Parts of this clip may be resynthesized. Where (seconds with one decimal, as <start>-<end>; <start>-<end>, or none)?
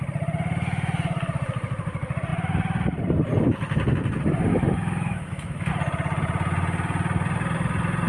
4.5-5.7